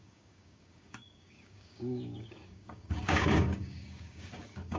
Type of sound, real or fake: fake